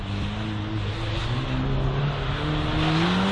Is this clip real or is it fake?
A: real